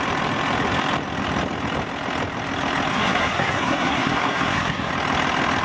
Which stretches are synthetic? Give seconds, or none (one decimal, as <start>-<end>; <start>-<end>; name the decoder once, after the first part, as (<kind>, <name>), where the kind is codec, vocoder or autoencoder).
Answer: 2.9-4.9 (codec, SNAC)